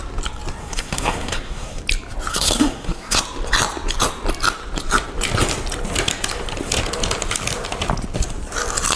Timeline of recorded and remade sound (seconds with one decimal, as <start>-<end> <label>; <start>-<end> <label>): 0.0-0.6 recorded; 0.6-1.8 remade; 1.8-2.3 recorded; 2.3-3.2 remade; 3.2-9.0 recorded